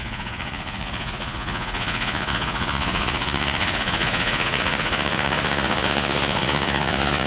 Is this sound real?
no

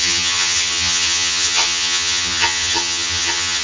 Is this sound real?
no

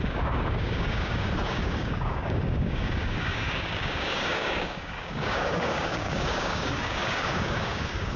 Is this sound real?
no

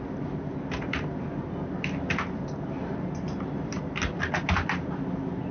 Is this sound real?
yes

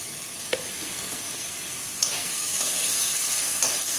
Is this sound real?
no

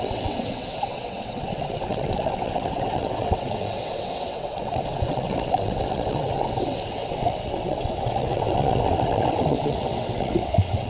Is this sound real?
no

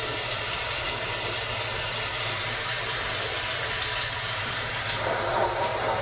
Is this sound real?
no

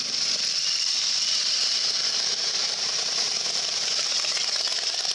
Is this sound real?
no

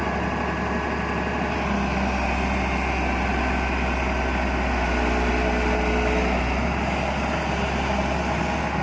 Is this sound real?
yes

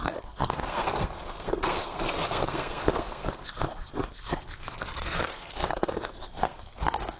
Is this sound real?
no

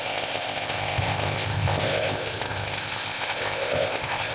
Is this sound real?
no